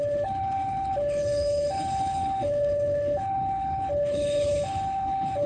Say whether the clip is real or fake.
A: fake